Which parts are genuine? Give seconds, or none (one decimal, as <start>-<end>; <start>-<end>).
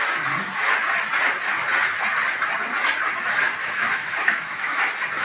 0.0-3.6; 4.8-5.2